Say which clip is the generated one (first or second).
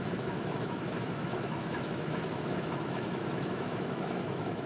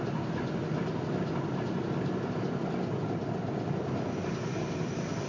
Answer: first